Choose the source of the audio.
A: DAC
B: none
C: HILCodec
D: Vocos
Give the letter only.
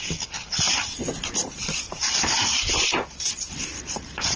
B